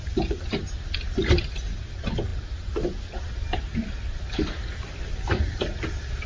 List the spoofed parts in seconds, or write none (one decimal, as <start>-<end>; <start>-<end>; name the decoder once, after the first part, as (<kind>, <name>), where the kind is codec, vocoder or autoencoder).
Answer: none